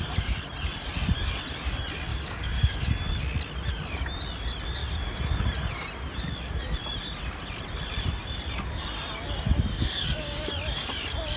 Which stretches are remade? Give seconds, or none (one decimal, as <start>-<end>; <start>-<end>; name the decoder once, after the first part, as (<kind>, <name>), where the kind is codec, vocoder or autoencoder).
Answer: 2.1-2.9 (codec, DAC); 9.7-10.5